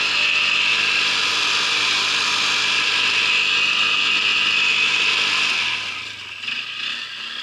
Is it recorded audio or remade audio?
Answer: recorded